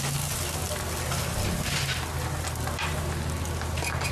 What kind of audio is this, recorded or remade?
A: recorded